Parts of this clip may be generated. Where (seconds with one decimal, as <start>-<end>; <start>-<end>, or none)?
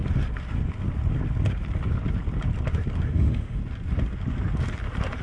3.1-3.6